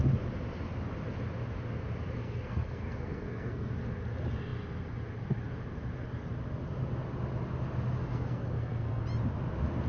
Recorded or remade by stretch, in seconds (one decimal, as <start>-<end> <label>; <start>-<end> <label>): 0.0-2.2 recorded; 2.2-3.7 remade; 3.7-8.0 recorded; 8.0-9.0 remade; 9.0-9.9 recorded